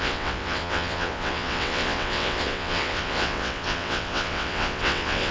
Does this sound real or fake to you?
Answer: fake